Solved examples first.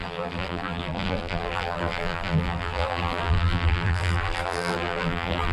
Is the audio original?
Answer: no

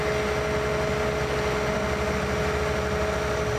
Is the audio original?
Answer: yes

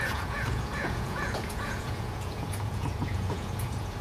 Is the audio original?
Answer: no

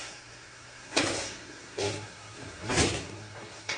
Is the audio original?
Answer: no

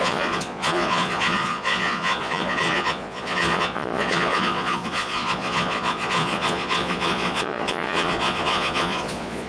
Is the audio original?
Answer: no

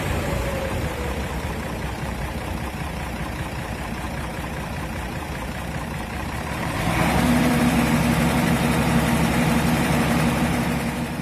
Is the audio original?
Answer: no